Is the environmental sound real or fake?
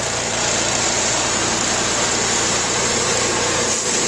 fake